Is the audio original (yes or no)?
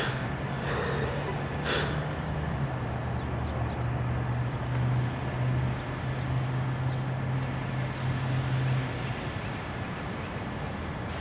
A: yes